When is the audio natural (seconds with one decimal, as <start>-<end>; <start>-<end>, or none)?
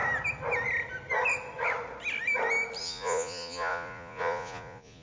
0.0-2.8